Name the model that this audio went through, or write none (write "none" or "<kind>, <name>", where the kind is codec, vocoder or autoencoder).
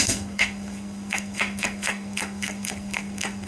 codec, SNAC